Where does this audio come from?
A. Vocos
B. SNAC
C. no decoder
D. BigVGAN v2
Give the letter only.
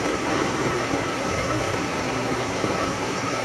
B